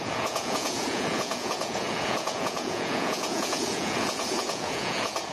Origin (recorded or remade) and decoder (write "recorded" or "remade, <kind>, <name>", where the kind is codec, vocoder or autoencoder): remade, vocoder, Vocos